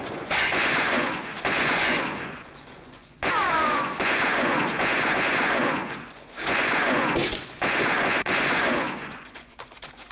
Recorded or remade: remade